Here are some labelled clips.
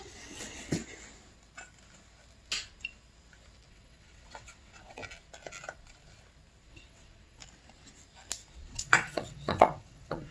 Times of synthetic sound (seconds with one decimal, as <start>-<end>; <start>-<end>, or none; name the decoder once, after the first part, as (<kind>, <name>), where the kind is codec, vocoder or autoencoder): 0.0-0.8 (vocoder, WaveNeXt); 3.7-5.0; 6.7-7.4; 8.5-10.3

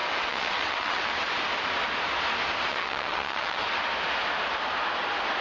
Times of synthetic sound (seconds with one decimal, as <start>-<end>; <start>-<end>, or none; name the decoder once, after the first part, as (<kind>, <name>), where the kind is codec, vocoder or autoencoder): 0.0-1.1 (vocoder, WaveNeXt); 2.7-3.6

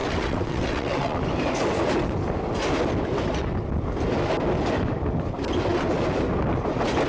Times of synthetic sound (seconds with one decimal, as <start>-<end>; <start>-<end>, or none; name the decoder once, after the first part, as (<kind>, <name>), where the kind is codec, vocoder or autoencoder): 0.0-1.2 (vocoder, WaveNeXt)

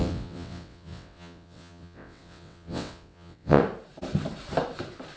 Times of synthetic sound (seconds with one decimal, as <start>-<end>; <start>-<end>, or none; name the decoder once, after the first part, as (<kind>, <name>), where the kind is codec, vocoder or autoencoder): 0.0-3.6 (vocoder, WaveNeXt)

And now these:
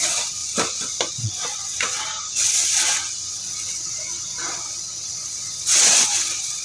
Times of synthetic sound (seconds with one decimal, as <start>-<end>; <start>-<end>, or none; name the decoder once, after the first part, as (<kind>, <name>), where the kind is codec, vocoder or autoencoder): 0.0-0.4 (vocoder, WaveNeXt); 1.1-2.1; 3.3-6.6

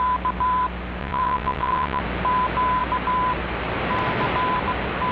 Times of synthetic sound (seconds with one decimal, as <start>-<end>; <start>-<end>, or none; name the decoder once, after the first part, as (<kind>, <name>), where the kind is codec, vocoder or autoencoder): 1.0-2.0 (vocoder, WaveNeXt)